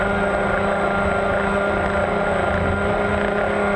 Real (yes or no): yes